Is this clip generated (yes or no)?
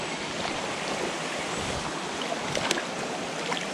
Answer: no